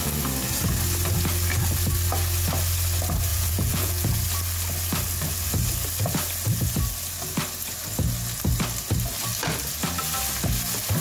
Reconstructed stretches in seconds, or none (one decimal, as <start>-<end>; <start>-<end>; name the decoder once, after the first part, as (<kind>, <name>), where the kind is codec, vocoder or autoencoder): 3.3-4.2 (vocoder, Vocos)